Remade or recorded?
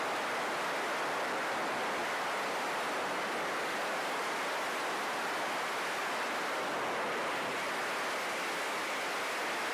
recorded